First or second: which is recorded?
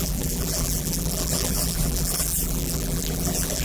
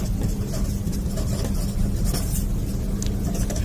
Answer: second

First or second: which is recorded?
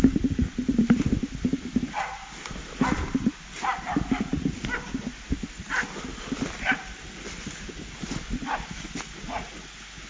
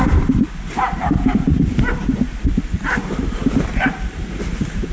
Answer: first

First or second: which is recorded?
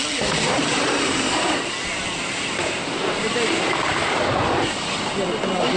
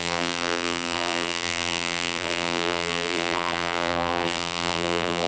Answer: first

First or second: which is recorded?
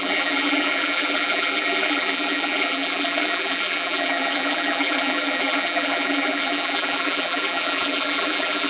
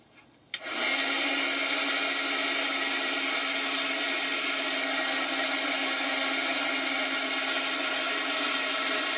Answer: second